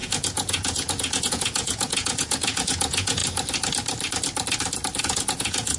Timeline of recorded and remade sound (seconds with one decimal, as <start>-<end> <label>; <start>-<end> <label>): 0.0-3.2 remade; 3.2-5.0 recorded; 5.0-5.8 remade